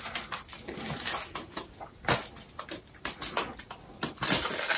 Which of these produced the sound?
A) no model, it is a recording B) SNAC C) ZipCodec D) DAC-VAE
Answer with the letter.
A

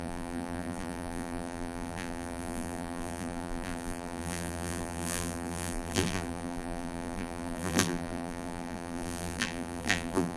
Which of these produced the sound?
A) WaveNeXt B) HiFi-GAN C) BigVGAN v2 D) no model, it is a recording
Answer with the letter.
C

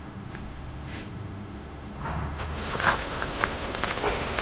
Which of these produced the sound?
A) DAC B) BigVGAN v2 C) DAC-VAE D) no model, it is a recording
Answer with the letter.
C